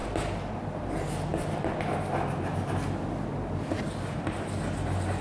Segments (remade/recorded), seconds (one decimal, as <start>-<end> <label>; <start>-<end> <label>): 0.0-5.2 recorded